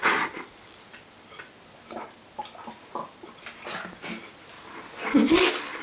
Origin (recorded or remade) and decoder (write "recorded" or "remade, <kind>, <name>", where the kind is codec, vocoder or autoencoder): recorded